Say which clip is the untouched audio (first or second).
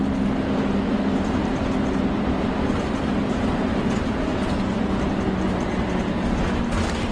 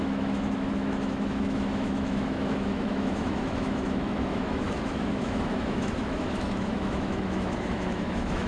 first